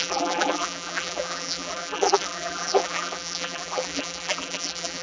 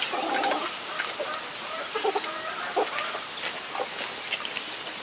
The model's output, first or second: first